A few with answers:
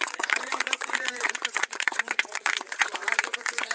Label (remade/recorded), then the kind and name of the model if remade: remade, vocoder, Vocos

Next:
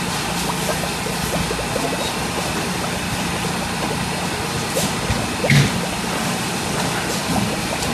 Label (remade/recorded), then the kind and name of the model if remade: recorded